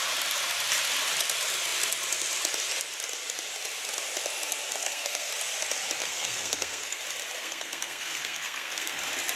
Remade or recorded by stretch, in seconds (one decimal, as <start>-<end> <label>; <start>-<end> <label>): 0.0-4.8 recorded; 4.8-5.3 remade; 5.3-6.0 recorded; 6.0-7.0 remade; 7.0-7.4 recorded; 7.4-9.0 remade; 9.0-9.4 recorded